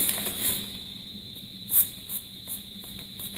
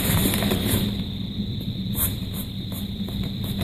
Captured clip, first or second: second